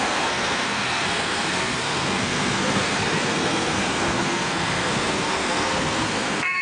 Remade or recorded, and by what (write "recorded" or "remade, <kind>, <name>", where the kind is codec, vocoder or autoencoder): remade, codec, SNAC